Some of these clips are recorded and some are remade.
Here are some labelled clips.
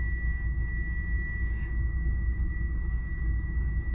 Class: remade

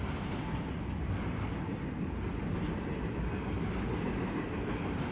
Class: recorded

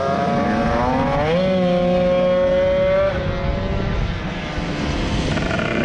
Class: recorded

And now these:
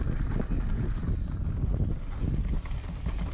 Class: recorded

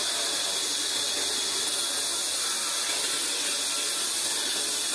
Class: recorded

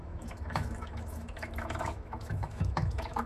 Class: remade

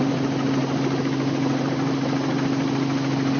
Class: recorded